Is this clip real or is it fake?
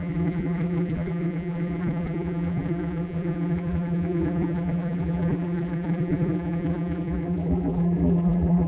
fake